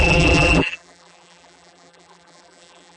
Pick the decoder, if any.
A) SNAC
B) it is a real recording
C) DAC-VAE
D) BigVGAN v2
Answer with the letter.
D